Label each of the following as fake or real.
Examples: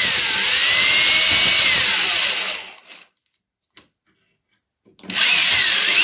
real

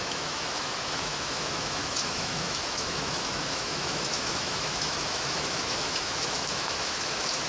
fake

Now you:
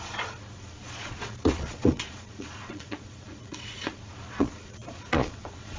fake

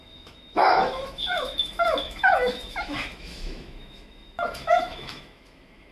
fake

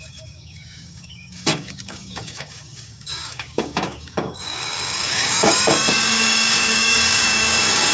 fake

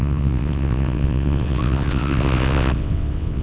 fake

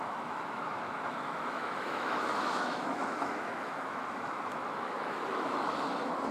fake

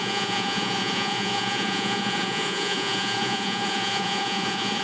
fake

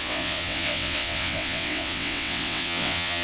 fake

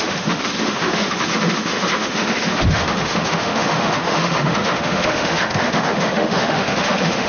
fake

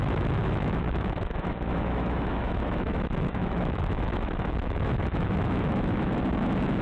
fake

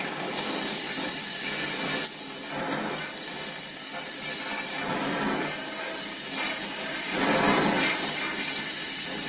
real